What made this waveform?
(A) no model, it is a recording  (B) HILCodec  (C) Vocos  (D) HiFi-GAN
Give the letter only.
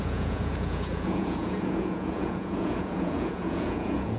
C